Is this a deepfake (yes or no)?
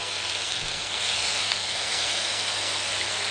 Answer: yes